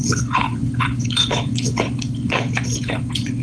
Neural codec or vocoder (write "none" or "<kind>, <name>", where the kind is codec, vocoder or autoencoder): codec, HILCodec